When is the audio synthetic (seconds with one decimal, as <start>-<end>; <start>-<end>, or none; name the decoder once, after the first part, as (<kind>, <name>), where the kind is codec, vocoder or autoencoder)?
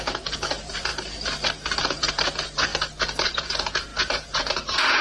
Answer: 0.0-0.9 (vocoder, Vocos); 1.8-2.7; 3.3-5.0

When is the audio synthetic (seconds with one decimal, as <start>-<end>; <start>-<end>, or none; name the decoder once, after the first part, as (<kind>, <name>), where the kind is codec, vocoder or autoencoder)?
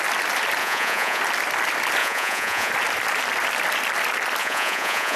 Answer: 0.6-1.2 (vocoder, Vocos); 2.0-2.7; 4.4-5.2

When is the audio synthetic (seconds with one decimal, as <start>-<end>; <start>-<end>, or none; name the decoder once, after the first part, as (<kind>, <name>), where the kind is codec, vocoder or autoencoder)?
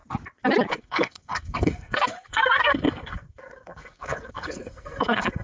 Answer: 0.7-5.4 (codec, SNAC)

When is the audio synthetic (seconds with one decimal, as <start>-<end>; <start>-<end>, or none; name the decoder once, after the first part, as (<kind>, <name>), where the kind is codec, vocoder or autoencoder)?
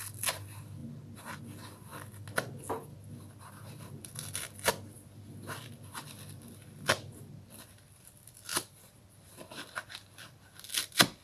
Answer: none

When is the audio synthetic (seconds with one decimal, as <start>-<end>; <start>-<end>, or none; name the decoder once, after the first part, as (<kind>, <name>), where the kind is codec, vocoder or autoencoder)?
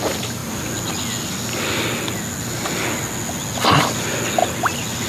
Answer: none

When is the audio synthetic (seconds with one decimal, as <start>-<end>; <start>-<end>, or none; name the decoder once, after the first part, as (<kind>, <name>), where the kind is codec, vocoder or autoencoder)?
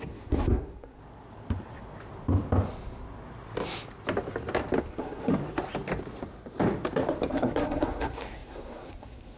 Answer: 0.0-1.0 (codec, SNAC); 4.8-5.4; 7.3-9.4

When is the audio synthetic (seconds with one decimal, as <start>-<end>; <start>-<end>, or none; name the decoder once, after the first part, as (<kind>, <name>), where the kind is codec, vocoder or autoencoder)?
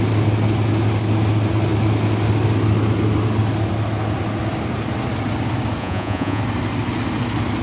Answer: 5.8-6.4 (vocoder, Vocos)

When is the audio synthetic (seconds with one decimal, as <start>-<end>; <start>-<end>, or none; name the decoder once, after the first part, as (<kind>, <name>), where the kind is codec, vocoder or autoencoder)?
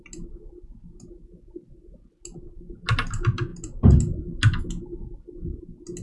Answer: none